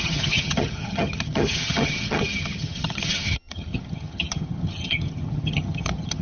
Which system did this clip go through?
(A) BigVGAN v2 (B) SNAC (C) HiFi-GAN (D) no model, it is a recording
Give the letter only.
C